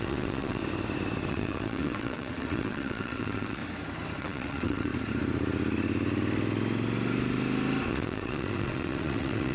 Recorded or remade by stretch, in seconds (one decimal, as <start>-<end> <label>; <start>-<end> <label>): 0.0-0.6 remade; 0.6-1.3 recorded; 1.3-3.6 remade; 3.6-4.2 recorded; 4.2-4.9 remade; 4.9-7.9 recorded; 7.9-9.5 remade